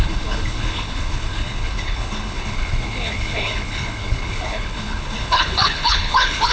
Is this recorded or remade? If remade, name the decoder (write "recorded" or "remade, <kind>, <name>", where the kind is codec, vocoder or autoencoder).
remade, codec, HILCodec